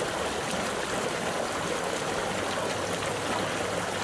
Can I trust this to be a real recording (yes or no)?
yes